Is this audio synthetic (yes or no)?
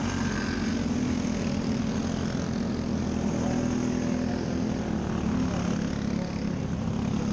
no